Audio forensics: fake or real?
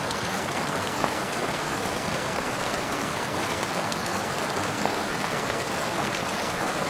fake